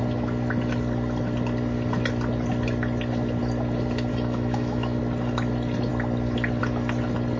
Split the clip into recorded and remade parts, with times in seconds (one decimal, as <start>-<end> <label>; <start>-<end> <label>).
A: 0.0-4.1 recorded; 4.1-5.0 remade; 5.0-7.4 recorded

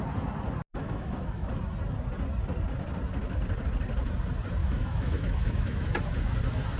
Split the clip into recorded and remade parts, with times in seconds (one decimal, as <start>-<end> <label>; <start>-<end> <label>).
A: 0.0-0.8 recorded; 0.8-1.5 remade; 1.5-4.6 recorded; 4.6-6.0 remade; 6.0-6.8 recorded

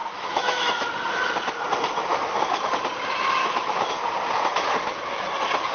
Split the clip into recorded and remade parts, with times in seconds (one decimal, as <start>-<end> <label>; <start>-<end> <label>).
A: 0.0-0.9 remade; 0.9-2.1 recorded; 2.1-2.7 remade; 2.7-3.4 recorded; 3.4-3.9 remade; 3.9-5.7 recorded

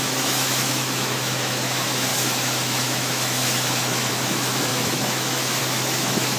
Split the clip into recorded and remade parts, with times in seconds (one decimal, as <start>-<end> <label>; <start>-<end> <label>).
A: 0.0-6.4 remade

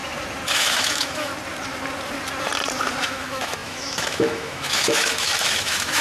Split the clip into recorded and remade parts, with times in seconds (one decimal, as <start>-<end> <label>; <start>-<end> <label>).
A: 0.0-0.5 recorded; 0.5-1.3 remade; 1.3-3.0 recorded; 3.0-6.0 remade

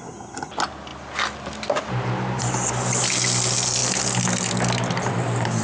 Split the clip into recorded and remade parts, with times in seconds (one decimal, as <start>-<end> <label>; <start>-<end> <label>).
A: 0.0-5.6 recorded

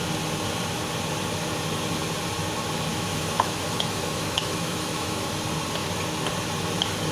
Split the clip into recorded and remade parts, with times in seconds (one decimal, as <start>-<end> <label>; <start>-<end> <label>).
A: 0.0-2.9 recorded; 2.9-5.3 remade; 5.3-7.1 recorded

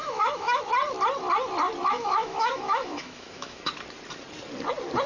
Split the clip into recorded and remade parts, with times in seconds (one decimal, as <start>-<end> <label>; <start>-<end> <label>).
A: 0.0-0.6 remade; 0.6-1.9 recorded; 1.9-3.7 remade; 3.7-5.1 recorded